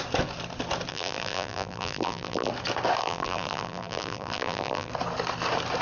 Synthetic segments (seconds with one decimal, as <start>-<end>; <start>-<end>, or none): 0.9-2.5; 3.0-4.9